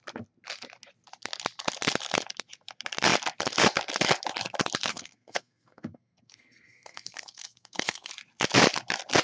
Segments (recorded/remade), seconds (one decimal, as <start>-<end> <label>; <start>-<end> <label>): 0.0-4.9 recorded; 4.9-8.1 remade; 8.1-9.2 recorded